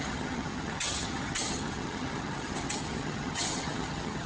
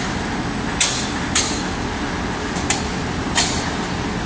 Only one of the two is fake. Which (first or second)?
first